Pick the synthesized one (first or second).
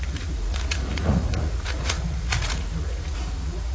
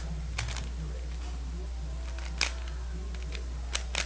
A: first